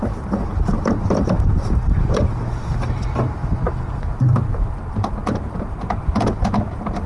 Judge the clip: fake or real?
fake